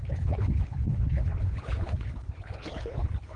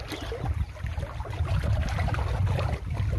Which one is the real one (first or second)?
second